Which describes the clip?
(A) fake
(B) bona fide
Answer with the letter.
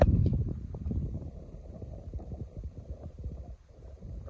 A